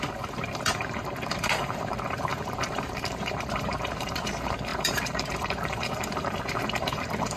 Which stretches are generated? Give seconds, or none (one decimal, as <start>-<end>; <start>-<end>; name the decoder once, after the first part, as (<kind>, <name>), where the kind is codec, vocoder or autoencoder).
0.0-7.4 (vocoder, BigVGAN v2)